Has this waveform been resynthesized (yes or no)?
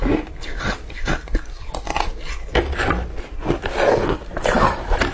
no